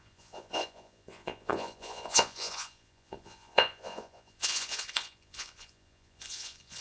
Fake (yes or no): yes